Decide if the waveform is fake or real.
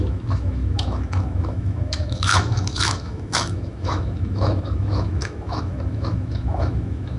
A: fake